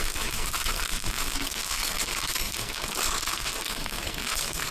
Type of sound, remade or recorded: remade